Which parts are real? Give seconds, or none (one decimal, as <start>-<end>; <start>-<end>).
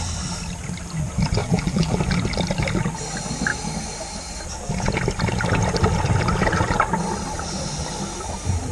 0.0-1.4; 2.0-8.7